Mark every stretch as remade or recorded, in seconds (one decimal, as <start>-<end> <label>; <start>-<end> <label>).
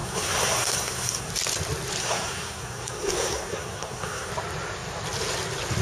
0.0-1.3 remade; 1.3-2.0 recorded; 2.0-4.3 remade; 4.3-5.8 recorded